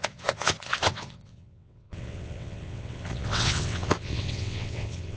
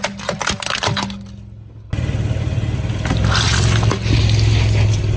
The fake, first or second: first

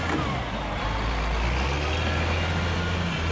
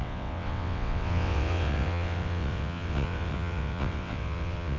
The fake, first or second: second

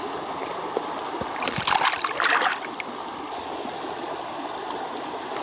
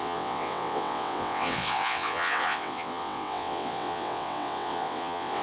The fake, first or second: second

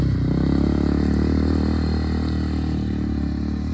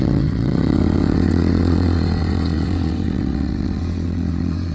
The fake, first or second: second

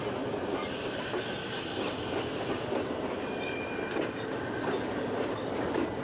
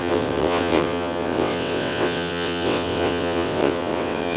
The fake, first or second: second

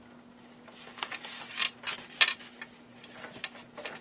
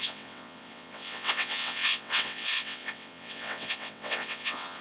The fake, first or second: second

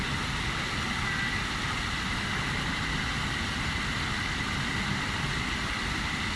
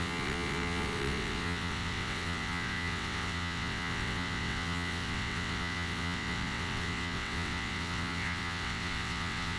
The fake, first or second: second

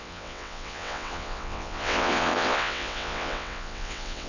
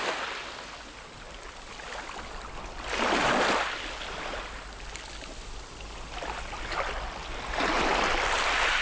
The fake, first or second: first